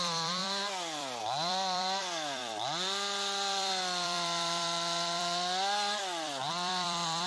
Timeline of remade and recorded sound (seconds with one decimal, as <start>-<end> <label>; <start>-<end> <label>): 0.0-7.3 remade